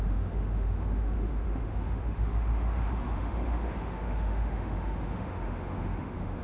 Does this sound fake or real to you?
fake